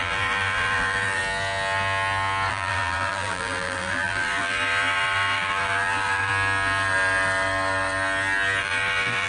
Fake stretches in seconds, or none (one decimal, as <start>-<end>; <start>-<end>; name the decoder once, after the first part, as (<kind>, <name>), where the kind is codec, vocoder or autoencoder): 0.0-1.2 (vocoder, BigVGAN v2); 2.5-6.3; 8.6-9.3